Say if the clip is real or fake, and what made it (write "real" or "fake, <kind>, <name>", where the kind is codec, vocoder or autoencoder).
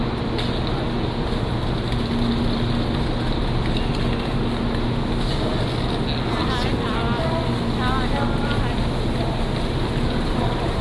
real